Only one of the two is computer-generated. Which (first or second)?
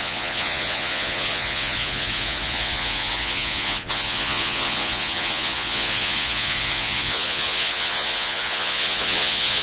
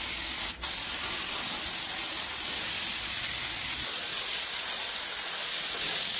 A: first